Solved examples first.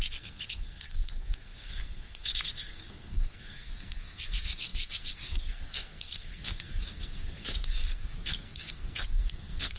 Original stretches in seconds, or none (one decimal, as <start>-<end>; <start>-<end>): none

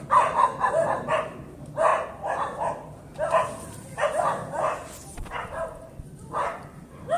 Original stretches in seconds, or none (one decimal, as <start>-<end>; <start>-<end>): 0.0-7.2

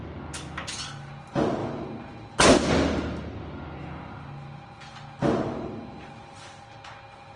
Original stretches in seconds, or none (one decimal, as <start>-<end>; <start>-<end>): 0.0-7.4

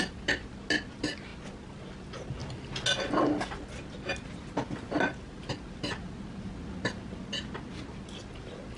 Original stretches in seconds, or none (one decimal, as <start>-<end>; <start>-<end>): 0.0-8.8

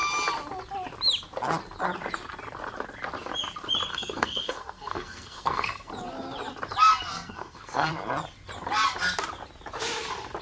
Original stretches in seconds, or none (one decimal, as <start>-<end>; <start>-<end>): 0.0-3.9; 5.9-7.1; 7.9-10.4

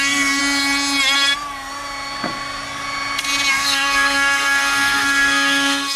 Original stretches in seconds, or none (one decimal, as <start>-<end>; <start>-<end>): 0.4-3.5

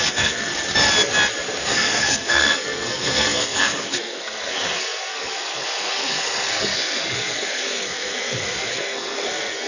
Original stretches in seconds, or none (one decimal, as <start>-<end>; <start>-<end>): 0.5-1.6

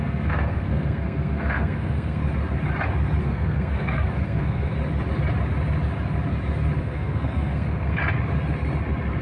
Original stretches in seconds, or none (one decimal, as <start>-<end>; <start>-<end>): 2.2-3.2; 4.7-6.8; 8.0-9.2